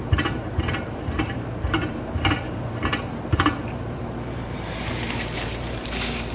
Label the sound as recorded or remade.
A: remade